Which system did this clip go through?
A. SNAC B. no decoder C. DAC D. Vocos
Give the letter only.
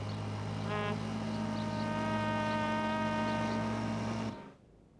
B